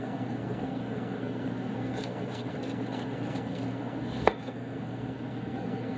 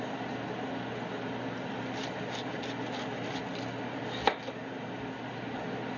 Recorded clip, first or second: second